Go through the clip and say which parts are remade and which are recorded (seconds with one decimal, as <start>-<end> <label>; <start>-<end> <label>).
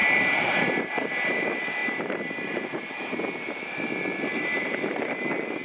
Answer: 0.0-4.3 recorded; 4.3-5.1 remade; 5.1-5.6 recorded